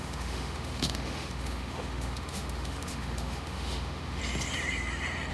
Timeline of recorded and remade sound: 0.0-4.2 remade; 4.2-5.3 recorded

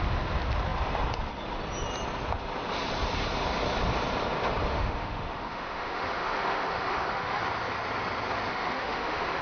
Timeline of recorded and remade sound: 0.0-4.7 recorded; 4.7-7.4 remade; 7.4-8.5 recorded; 8.5-9.4 remade

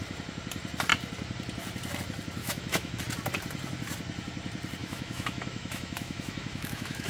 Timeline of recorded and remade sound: 0.0-2.4 recorded; 2.4-3.0 remade; 3.0-4.8 recorded; 4.8-7.1 remade

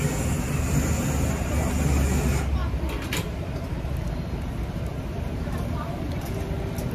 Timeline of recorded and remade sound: 0.0-6.9 recorded

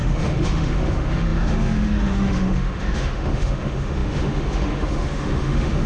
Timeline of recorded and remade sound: 0.0-5.9 remade

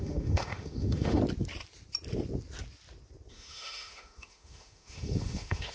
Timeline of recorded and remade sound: 0.0-1.2 remade; 1.2-3.3 recorded; 3.3-5.7 remade

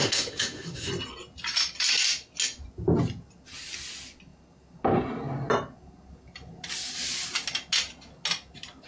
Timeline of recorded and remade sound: 0.0-0.9 remade; 0.9-8.9 recorded